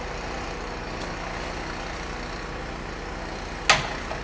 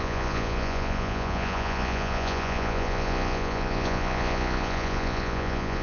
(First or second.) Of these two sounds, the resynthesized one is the second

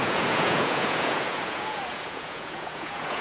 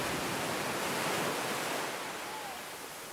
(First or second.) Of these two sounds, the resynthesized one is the first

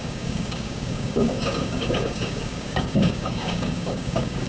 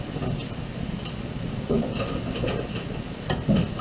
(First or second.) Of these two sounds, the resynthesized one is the first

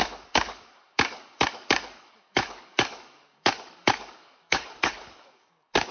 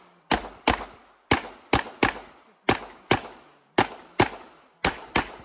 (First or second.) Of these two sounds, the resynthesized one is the first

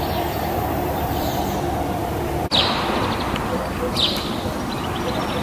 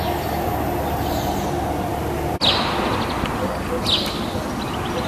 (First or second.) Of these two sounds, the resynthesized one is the first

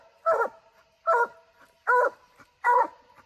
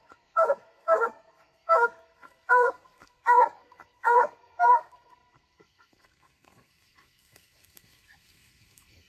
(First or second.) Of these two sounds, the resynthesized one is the second